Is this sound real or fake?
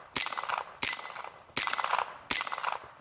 real